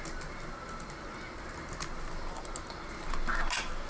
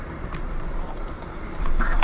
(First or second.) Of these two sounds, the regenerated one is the second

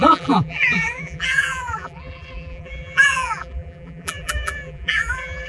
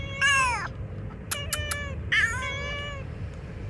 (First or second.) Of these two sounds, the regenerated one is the first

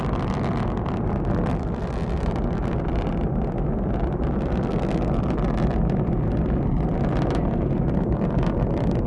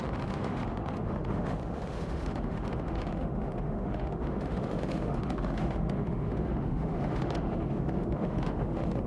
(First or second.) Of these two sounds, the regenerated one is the second